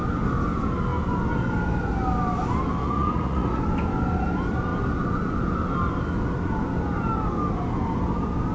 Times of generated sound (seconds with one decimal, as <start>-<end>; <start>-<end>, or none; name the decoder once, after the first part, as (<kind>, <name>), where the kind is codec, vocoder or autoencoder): 2.8-3.6 (vocoder, Vocos)